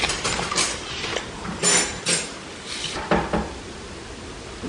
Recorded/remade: recorded